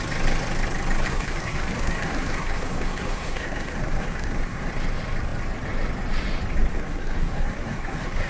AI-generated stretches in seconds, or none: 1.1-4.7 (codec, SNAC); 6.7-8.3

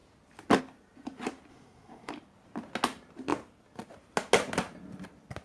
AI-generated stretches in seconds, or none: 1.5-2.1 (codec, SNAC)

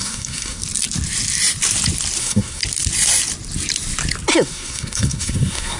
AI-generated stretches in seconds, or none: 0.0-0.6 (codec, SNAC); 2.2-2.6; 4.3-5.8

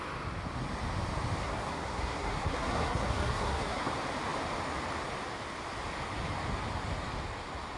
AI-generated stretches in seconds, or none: 1.4-3.9 (codec, SNAC)

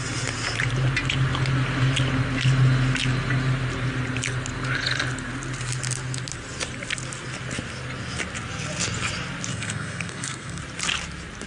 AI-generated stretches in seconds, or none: 9.5-10.6 (codec, SNAC)

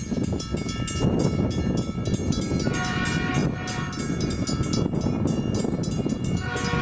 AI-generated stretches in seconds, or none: none

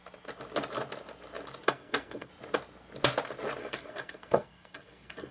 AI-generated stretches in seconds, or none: 1.7-2.3 (codec, SNAC); 3.6-5.3